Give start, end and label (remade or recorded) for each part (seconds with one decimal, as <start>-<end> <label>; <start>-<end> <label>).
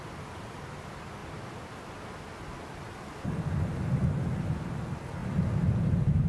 0.0-6.3 recorded